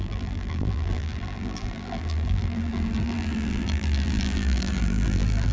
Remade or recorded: remade